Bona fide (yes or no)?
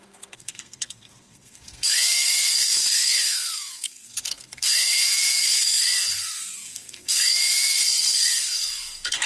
no